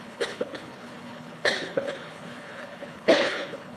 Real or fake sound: fake